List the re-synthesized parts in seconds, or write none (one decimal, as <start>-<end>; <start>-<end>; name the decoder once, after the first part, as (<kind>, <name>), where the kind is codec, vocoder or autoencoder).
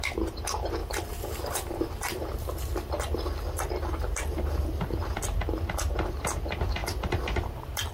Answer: 0.8-5.2 (vocoder, BigVGAN v2); 6.8-7.5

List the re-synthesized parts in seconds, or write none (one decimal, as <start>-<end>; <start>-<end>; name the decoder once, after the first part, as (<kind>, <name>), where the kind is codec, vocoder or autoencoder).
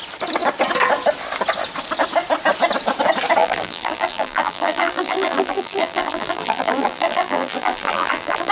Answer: 3.4-8.5 (vocoder, BigVGAN v2)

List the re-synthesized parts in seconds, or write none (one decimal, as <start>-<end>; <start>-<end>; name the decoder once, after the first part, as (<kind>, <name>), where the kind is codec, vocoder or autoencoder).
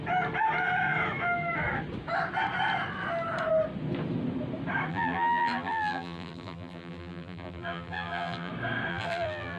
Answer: 4.9-8.5 (vocoder, BigVGAN v2); 8.9-9.6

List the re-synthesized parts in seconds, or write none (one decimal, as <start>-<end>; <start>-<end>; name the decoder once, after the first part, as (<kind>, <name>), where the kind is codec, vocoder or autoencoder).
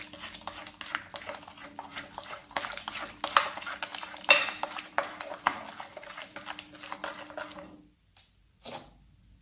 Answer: 1.9-2.6 (vocoder, BigVGAN v2); 3.9-5.6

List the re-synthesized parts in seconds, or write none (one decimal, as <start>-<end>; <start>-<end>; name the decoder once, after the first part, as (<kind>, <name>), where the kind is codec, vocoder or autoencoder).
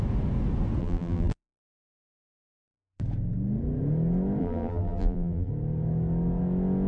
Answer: 0.8-3.0 (vocoder, BigVGAN v2); 4.4-5.5